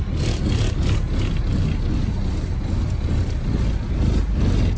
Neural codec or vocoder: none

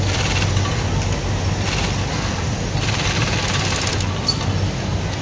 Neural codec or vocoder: none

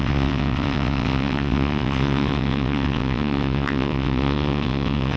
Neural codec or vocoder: vocoder, WaveNeXt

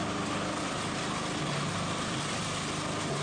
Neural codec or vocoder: none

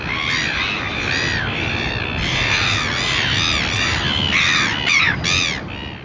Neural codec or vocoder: none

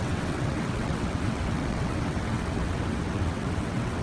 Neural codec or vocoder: vocoder, WaveNeXt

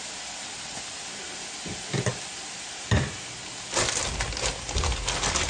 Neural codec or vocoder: none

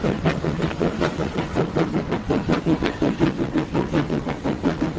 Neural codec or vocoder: vocoder, WaveNeXt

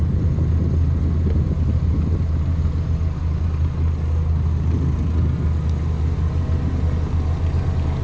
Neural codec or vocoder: none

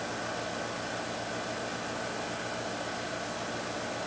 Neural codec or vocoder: none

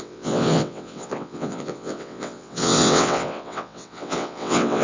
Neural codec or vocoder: vocoder, WaveNeXt